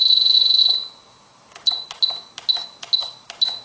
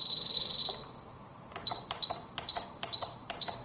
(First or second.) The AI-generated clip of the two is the second